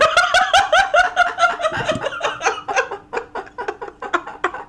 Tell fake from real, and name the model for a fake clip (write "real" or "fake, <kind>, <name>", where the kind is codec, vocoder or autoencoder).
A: real